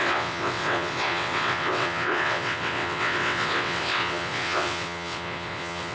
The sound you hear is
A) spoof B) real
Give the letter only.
A